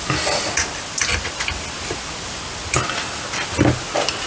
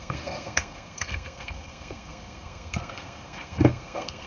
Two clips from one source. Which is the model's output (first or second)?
second